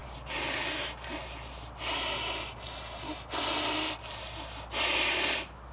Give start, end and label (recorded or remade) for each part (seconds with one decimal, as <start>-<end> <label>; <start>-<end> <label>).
0.0-5.7 recorded